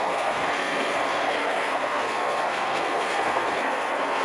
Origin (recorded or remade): remade